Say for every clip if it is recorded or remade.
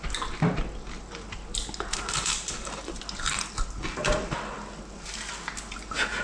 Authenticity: recorded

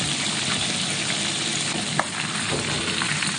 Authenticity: recorded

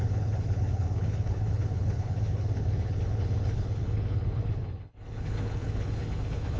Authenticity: remade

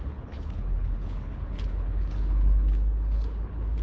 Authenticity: remade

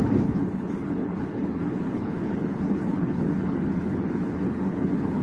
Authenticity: remade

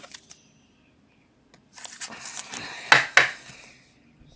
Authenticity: recorded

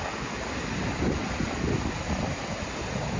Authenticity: recorded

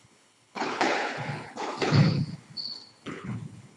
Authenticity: remade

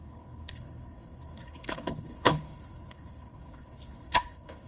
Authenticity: remade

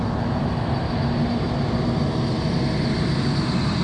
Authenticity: recorded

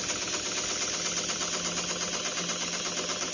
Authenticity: recorded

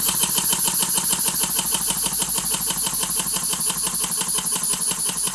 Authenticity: recorded